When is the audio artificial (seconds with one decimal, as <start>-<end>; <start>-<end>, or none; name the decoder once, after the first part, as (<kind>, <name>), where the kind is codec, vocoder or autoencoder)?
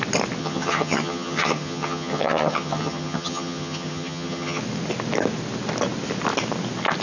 0.4-4.6 (vocoder, HiFi-GAN)